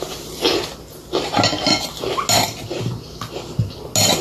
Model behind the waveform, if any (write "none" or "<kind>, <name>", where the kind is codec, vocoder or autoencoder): none